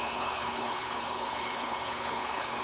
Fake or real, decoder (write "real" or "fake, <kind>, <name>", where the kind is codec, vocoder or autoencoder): fake, codec, HILCodec